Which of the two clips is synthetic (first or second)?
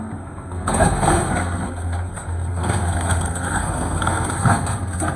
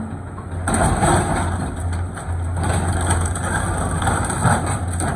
first